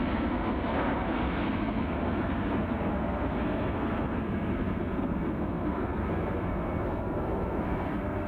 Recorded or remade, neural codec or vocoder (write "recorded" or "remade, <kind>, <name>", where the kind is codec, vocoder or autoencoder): remade, codec, SNAC